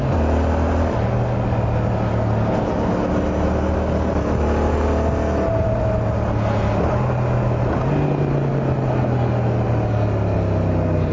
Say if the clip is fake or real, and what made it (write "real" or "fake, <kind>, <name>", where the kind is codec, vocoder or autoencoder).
real